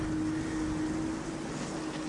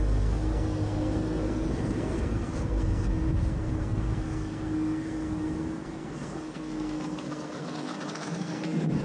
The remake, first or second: second